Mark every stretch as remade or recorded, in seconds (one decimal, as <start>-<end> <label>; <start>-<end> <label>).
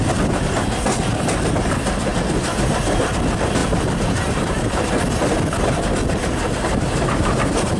0.0-3.6 recorded; 3.6-5.0 remade; 5.0-6.7 recorded; 6.7-7.8 remade